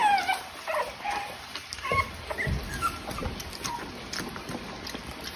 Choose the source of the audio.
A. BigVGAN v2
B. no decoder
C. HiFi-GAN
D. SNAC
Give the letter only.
B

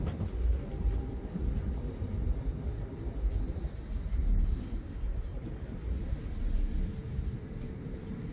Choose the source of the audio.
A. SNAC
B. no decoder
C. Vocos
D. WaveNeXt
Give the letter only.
B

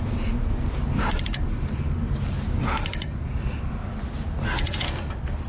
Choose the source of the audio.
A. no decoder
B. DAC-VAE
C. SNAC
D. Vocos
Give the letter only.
A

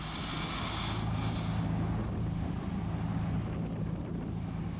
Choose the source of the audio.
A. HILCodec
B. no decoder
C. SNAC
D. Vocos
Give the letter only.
B